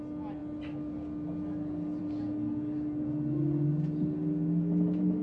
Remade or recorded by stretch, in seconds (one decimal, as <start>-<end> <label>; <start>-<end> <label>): 0.0-5.2 recorded